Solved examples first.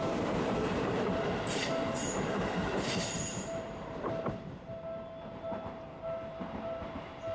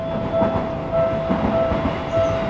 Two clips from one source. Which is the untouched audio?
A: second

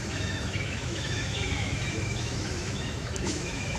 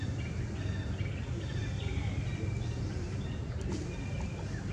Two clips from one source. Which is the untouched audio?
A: second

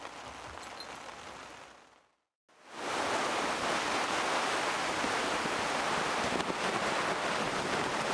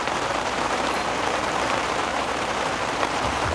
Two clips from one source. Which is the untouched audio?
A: first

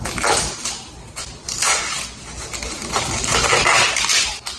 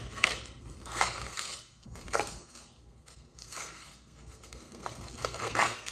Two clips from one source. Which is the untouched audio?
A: first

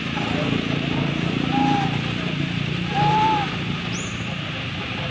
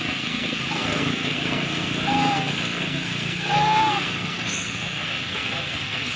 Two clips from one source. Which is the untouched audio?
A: first